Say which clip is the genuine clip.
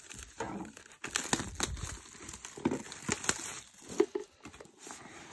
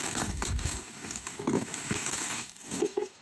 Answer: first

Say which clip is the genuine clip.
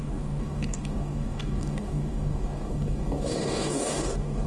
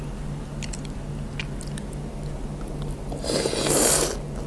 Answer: second